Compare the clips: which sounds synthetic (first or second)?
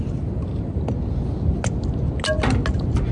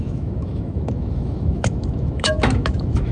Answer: second